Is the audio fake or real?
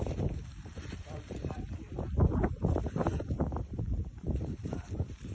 fake